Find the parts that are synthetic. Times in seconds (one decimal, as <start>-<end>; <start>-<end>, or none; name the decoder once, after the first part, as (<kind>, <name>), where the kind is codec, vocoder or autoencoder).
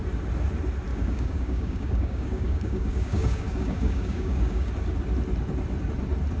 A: 0.9-4.7 (codec, DAC)